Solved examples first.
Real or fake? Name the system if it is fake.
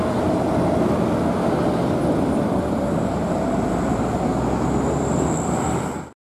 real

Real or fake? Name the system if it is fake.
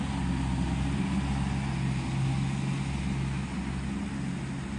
real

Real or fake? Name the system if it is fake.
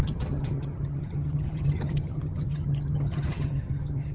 fake, vocoder, HiFi-GAN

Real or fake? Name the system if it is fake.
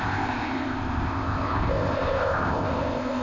fake, codec, ZipCodec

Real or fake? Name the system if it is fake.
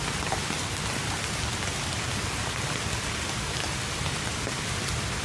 real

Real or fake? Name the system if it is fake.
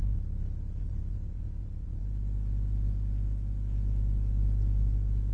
real